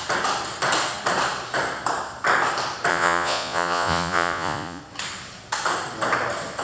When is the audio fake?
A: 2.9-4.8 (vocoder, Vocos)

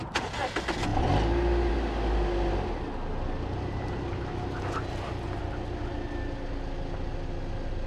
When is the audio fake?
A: none

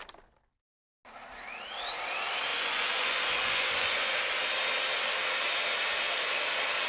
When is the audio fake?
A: 2.5-4.2 (vocoder, Vocos)

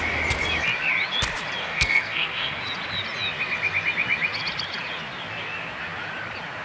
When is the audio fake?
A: 1.6-2.6 (codec, SNAC)